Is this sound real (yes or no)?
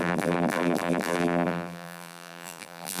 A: no